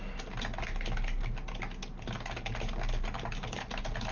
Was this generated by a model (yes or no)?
no